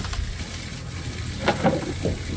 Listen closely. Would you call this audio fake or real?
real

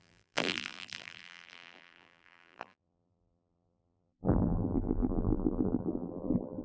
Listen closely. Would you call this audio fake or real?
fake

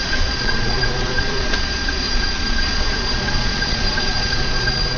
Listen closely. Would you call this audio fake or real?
fake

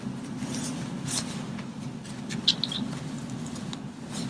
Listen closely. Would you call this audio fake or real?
real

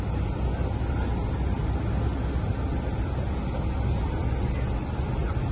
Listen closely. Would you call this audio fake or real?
real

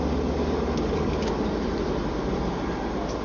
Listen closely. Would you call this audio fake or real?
real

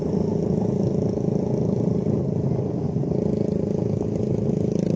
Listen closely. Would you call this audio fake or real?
real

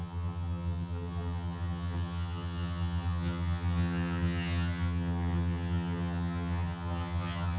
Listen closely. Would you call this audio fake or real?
fake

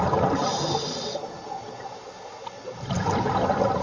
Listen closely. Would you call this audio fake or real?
real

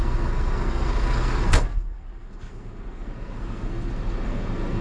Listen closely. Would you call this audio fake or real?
fake